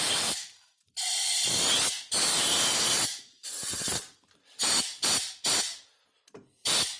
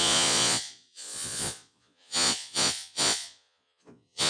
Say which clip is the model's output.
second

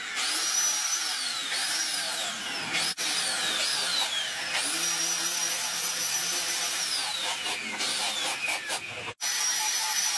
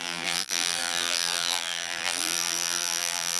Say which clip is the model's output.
second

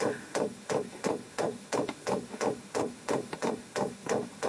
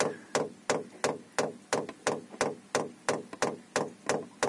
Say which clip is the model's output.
first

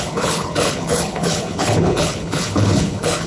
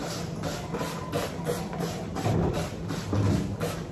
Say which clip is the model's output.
first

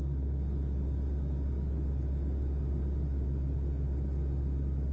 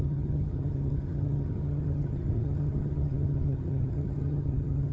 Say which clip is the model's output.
second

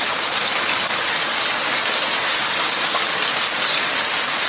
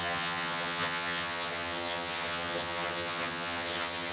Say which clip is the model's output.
second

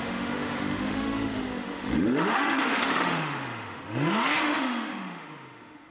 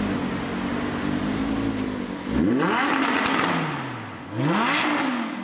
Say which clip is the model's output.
first